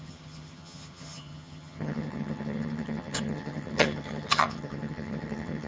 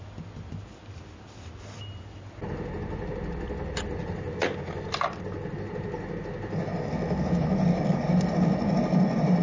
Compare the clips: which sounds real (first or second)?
second